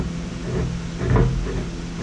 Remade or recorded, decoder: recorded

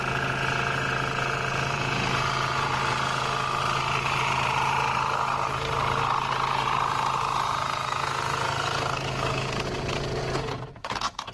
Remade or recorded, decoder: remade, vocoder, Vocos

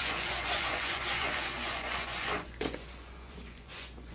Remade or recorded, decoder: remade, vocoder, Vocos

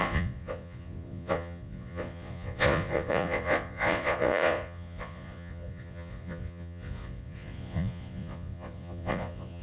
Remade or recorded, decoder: remade, vocoder, Vocos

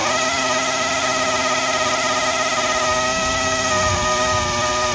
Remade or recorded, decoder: recorded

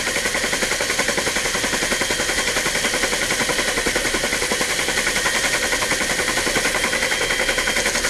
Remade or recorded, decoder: recorded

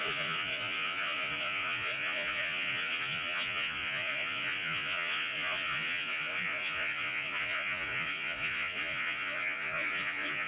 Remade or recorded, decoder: remade, vocoder, Vocos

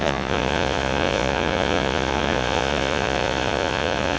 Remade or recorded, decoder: remade, vocoder, Vocos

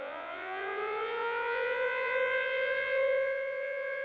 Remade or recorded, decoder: remade, vocoder, Vocos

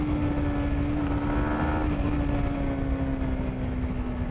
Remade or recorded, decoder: recorded